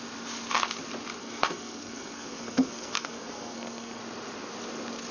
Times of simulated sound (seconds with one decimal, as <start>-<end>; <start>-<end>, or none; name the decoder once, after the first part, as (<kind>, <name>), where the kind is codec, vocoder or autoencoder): 1.2-4.0 (codec, SNAC)